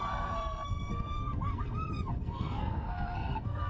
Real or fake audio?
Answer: fake